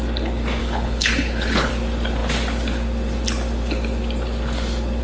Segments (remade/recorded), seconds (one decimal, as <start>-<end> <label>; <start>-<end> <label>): 0.0-0.6 recorded; 0.6-1.7 remade; 1.7-5.0 recorded